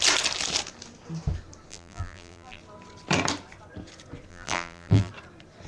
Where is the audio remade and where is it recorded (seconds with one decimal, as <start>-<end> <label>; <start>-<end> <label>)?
0.0-1.7 recorded; 1.7-2.6 remade; 2.6-4.3 recorded; 4.3-5.1 remade; 5.1-5.7 recorded